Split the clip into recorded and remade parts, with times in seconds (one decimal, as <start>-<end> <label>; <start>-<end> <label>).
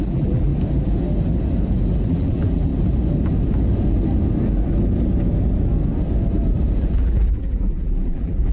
0.0-0.5 remade; 0.5-2.1 recorded; 2.1-2.7 remade; 2.7-6.8 recorded; 6.8-8.5 remade